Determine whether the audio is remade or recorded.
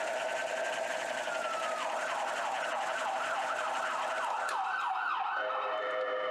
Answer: recorded